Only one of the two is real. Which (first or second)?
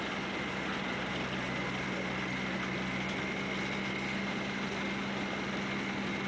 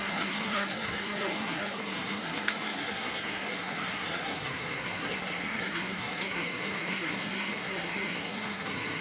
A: first